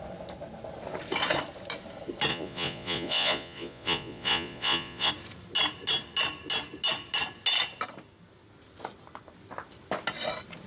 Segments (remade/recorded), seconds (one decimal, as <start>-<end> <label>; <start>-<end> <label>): 0.0-2.3 recorded; 2.3-5.1 remade; 5.1-10.7 recorded